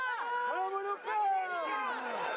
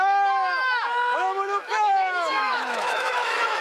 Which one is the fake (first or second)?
second